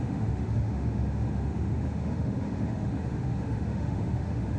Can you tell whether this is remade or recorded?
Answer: remade